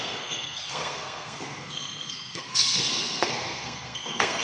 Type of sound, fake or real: fake